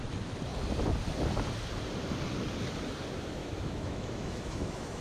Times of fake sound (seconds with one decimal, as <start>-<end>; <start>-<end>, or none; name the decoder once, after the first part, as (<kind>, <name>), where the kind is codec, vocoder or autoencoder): 3.4-5.0 (autoencoder, DAC-VAE)